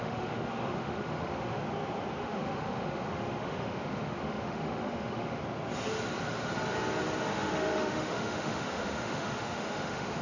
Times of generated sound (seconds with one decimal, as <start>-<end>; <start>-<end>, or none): 0.0-1.6; 2.2-5.4; 7.3-10.2